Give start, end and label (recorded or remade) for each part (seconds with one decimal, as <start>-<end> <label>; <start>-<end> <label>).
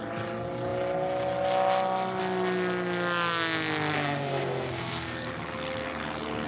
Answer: 0.0-3.9 recorded; 3.9-5.3 remade; 5.3-6.5 recorded